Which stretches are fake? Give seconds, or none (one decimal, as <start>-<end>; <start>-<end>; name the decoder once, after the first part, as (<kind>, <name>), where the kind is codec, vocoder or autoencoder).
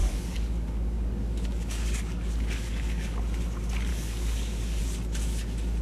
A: 0.0-3.2 (codec, DAC); 3.9-4.8